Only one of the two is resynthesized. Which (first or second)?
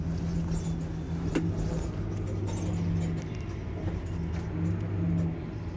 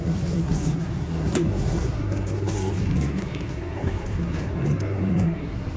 second